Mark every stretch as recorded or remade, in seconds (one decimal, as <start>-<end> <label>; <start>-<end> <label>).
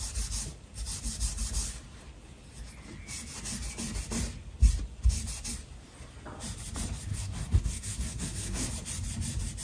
0.0-7.1 recorded; 7.1-8.7 remade; 8.7-9.6 recorded